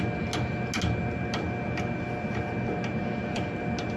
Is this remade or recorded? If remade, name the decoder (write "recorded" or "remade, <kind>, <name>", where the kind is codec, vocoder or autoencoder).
recorded